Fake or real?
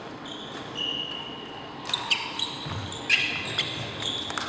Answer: real